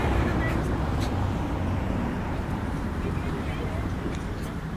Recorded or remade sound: remade